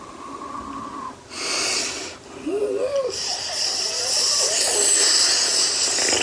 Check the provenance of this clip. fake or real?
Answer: real